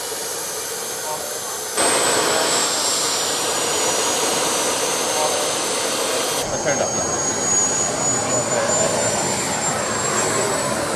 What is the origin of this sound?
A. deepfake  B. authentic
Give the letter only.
B